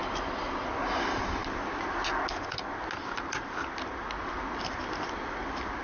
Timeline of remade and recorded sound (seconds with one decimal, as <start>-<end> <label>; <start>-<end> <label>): 0.0-5.8 recorded